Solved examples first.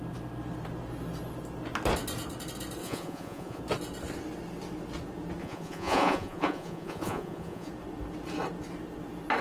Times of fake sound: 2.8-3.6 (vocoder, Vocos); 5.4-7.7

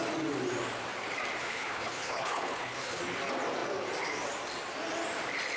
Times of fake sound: 1.4-3.0 (codec, HILCodec)

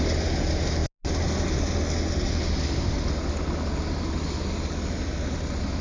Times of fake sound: none

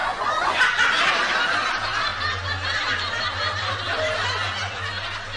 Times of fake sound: 0.0-0.6 (vocoder, Vocos)